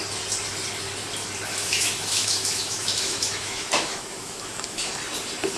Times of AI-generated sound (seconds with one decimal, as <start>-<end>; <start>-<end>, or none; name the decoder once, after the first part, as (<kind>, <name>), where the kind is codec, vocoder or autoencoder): 1.5-4.9 (autoencoder, DAC-VAE)